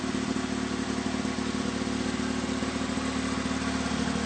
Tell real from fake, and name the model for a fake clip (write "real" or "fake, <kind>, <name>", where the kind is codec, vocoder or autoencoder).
real